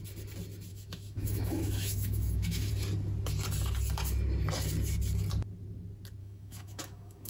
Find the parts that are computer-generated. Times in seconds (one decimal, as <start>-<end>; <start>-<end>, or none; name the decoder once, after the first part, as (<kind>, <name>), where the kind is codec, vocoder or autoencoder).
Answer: 0.7-2.7 (autoencoder, DAC-VAE); 6.2-7.3

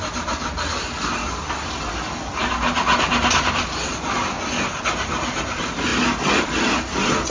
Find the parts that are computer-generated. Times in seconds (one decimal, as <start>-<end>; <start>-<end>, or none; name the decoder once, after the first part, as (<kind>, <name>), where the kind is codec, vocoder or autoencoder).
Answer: none

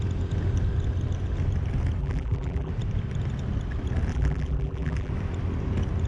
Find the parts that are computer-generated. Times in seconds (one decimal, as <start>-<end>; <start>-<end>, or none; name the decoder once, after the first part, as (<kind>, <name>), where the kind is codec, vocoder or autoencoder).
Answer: 2.0-2.7 (vocoder, BigVGAN v2); 4.1-5.1

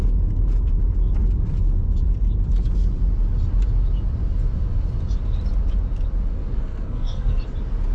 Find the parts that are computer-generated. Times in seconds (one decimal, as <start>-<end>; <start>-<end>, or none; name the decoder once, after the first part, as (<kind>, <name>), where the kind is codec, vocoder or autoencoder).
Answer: 6.3-7.4 (codec, SNAC)

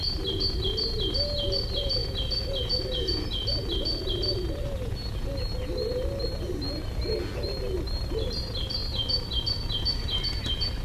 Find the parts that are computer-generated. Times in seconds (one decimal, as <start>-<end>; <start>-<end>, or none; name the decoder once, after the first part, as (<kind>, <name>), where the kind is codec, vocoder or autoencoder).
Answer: none